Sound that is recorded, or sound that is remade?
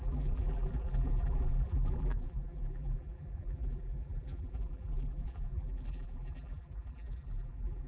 remade